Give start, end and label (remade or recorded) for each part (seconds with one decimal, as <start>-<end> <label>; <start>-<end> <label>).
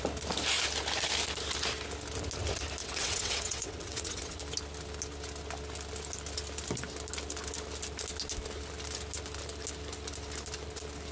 0.0-2.8 recorded; 2.8-4.4 remade; 4.4-11.1 recorded